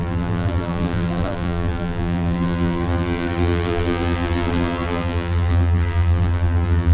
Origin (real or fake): fake